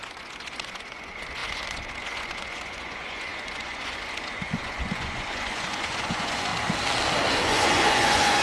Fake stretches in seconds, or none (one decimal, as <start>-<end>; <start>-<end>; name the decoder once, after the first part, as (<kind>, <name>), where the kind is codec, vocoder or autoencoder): 0.0-6.5 (vocoder, Vocos); 7.3-8.4